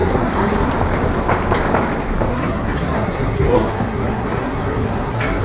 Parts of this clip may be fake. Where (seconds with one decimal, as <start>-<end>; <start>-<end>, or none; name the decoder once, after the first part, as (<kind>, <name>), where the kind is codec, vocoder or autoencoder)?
0.0-0.7 (codec, SNAC); 2.3-5.4